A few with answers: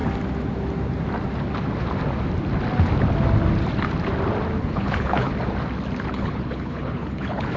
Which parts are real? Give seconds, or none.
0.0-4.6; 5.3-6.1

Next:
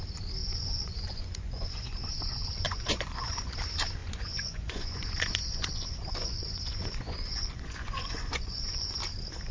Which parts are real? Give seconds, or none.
0.0-0.4; 3.6-4.0; 9.0-9.5

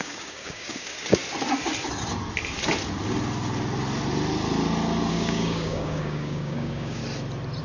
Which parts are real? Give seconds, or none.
1.2-5.1; 7.0-7.6

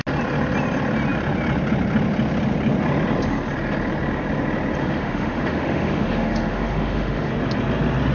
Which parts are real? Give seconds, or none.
0.0-4.8; 7.3-8.1